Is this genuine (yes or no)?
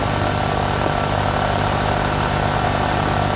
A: yes